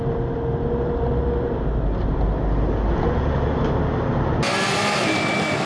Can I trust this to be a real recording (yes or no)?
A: yes